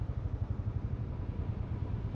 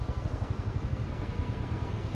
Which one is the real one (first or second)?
first